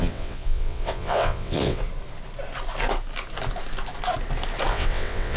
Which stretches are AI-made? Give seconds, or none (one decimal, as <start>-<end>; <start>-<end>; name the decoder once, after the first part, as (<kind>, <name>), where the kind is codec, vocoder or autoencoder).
0.0-1.8 (vocoder, WaveNeXt); 4.7-5.4